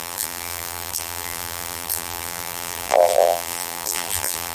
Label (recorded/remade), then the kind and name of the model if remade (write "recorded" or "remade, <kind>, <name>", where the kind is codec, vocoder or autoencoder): remade, vocoder, BigVGAN v2